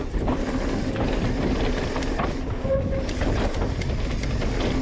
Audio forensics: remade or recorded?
recorded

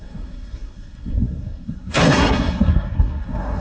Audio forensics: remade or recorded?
remade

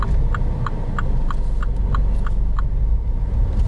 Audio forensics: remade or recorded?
recorded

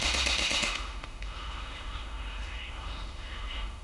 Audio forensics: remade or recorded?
remade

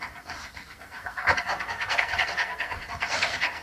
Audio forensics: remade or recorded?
remade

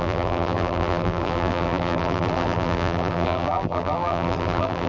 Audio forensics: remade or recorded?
remade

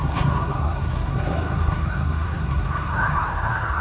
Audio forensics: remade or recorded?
remade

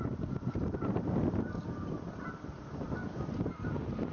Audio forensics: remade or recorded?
recorded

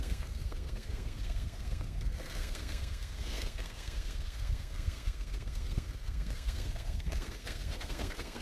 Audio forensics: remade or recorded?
remade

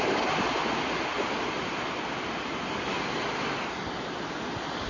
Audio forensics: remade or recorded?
recorded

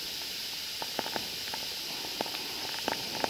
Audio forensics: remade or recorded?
recorded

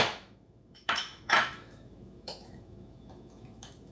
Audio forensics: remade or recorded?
remade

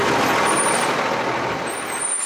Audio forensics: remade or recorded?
recorded